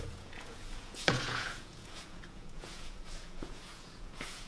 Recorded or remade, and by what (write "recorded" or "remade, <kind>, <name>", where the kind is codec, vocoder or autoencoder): remade, vocoder, Vocos